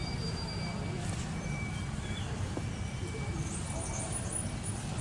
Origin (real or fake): fake